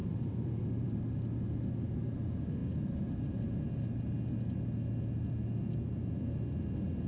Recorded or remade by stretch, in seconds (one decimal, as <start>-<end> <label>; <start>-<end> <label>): 0.0-1.0 remade; 1.0-7.1 recorded